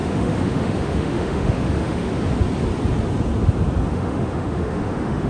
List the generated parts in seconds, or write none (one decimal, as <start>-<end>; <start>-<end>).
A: 0.0-2.1; 3.9-5.3